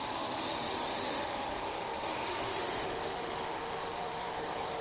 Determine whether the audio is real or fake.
fake